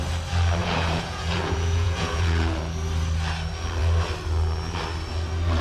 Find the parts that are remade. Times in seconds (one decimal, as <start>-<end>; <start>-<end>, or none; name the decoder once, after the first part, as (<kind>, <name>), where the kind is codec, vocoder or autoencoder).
0.6-2.6 (vocoder, Vocos)